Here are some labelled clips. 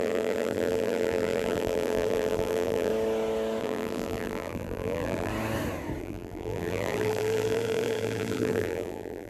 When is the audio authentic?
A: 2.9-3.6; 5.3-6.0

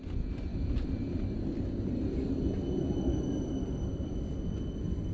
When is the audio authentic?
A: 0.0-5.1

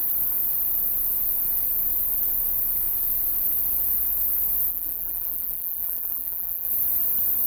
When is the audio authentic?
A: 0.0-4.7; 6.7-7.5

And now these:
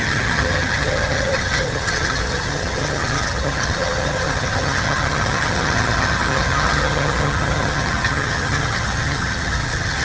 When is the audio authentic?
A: none

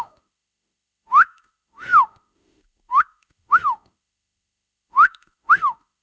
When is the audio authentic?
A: none